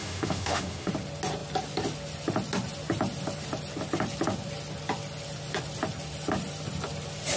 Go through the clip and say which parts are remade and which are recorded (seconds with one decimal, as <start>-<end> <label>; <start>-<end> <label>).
0.0-0.9 remade; 0.9-7.4 recorded